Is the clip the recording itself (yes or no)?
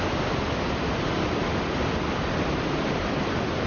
yes